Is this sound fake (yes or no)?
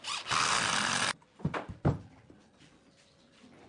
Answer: no